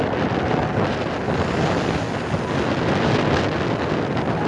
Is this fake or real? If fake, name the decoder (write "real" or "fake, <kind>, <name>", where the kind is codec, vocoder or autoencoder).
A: real